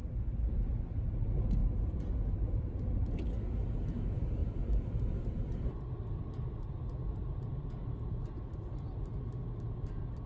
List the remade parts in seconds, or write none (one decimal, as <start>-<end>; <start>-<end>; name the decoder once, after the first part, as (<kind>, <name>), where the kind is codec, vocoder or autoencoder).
1.6-2.3 (vocoder, Vocos)